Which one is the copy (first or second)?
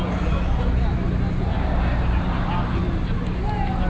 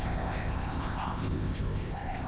second